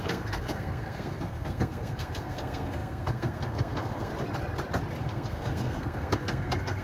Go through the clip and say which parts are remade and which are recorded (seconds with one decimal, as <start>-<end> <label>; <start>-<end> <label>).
0.0-4.1 remade; 4.1-5.0 recorded; 5.0-6.8 remade